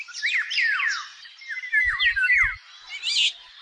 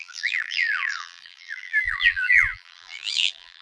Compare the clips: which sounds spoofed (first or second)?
second